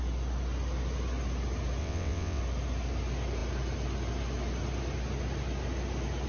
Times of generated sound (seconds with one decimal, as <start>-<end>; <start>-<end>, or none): 1.8-2.4